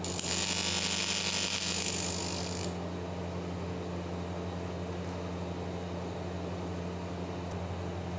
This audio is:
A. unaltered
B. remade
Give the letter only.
A